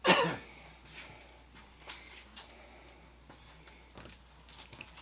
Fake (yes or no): no